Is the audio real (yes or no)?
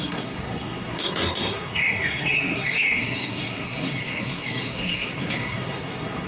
no